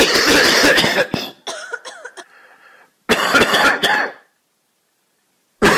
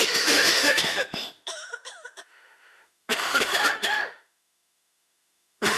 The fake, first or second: second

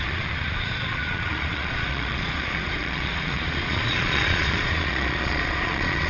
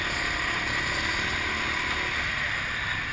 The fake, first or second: first